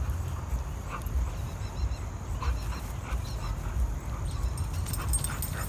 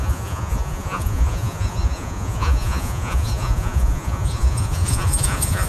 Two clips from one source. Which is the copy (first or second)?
second